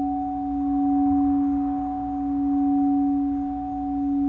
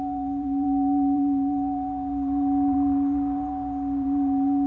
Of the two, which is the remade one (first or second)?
second